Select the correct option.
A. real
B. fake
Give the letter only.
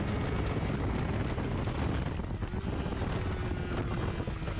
A